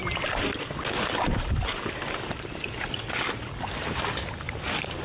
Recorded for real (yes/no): yes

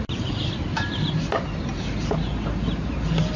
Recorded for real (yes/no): yes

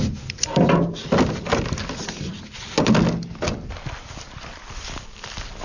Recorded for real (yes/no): yes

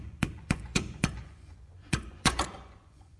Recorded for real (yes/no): no